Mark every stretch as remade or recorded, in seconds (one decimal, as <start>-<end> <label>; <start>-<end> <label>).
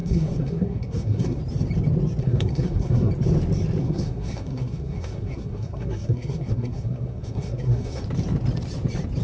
0.0-1.4 remade; 1.4-2.2 recorded; 2.2-3.1 remade; 3.1-3.8 recorded; 3.8-8.0 remade; 8.0-9.2 recorded